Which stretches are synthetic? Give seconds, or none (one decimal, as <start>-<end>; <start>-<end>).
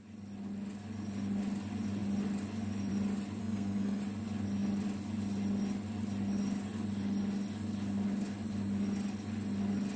3.4-4.0